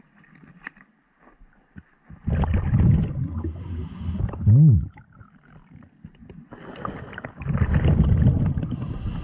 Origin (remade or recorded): recorded